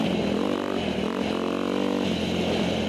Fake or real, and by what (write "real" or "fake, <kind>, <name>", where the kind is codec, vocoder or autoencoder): real